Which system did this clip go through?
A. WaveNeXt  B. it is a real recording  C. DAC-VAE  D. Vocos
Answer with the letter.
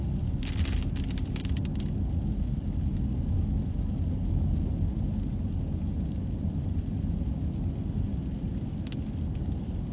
B